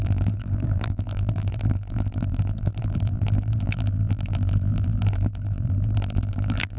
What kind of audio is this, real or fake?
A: fake